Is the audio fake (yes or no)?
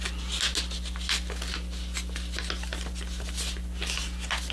no